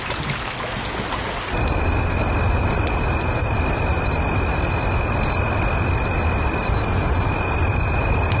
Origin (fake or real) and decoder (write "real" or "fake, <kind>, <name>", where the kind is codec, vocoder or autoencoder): real